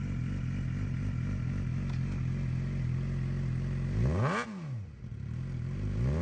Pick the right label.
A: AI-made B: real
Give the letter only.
B